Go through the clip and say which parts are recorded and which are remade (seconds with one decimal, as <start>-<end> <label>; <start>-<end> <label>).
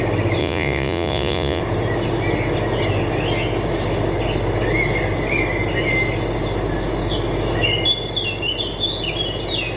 0.0-0.4 recorded; 0.4-1.6 remade; 1.6-9.8 recorded